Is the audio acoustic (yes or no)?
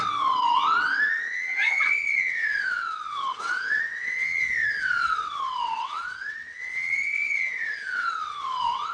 no